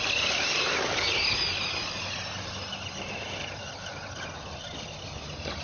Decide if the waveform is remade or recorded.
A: recorded